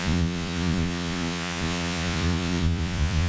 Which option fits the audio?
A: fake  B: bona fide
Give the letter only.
A